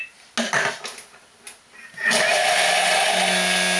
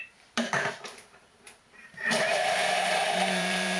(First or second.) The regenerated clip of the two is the second